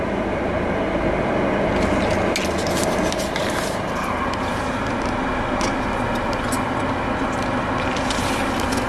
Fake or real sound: real